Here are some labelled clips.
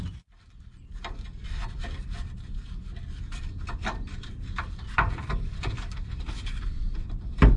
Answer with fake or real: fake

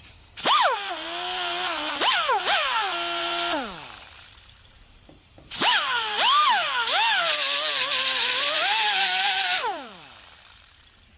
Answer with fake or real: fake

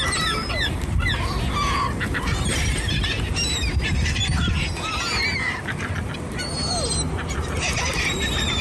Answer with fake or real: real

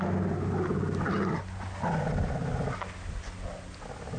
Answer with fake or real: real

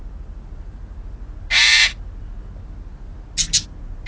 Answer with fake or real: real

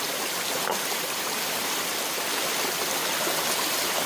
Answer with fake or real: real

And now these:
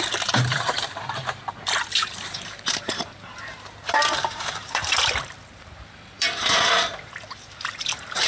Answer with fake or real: fake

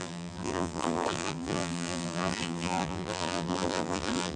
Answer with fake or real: fake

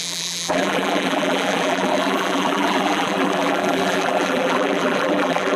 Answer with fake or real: fake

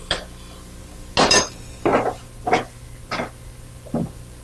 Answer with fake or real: real